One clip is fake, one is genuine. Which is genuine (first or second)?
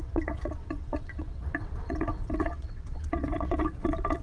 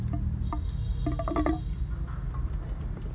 second